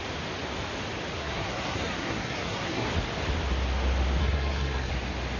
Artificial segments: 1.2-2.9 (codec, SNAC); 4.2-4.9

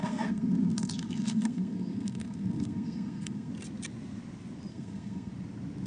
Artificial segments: 0.0-3.5 (codec, SNAC); 4.7-5.3